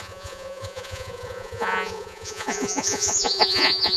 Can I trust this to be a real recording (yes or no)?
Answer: no